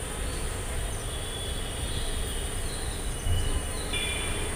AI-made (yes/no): no